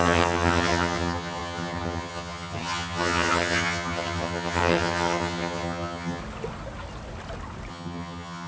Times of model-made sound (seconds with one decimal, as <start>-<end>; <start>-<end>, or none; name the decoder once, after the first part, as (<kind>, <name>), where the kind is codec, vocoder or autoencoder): 0.0-6.2 (vocoder, HiFi-GAN); 7.7-8.5